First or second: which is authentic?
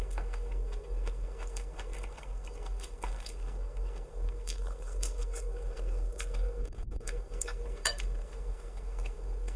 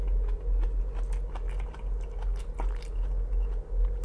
second